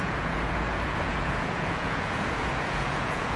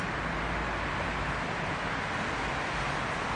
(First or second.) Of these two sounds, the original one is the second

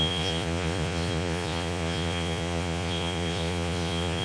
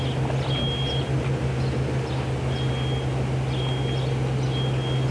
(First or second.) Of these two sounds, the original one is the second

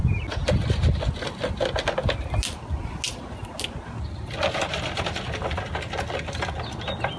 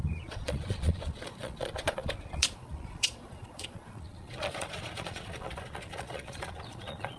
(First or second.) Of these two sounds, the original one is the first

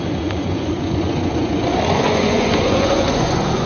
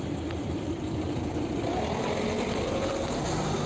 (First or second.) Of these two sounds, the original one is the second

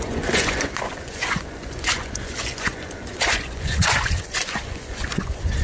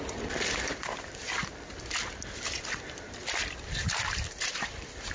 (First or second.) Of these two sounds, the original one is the second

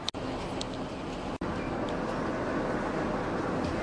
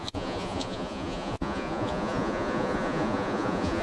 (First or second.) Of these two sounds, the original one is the first